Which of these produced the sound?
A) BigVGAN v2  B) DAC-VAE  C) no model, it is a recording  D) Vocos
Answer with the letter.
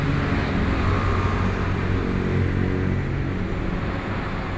C